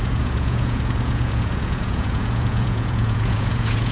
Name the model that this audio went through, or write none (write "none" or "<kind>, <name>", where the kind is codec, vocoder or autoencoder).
vocoder, Vocos